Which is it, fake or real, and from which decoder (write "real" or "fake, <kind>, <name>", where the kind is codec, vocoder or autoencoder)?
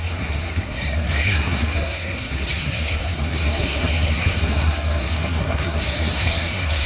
fake, codec, SNAC